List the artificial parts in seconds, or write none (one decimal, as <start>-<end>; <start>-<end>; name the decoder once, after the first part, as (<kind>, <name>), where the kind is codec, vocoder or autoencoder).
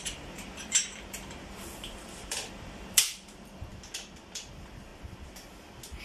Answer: 0.0-3.7 (vocoder, BigVGAN v2); 4.4-4.9